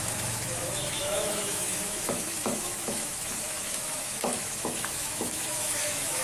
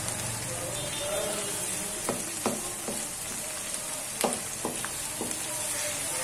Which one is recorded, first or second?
second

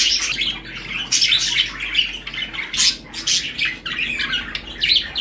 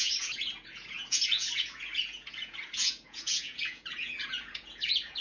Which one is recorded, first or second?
first